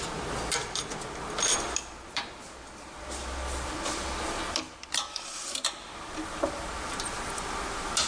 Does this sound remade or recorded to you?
recorded